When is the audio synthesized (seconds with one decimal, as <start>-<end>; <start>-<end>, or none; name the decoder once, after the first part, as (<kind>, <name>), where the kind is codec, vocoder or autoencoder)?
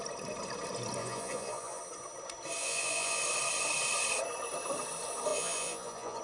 1.0-1.8 (vocoder, Vocos); 2.6-3.2; 5.3-6.2